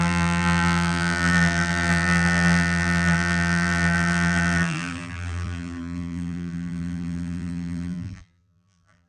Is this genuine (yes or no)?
no